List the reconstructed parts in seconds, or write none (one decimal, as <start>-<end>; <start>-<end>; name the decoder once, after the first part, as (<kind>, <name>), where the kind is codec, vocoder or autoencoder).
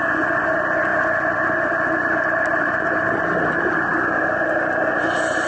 none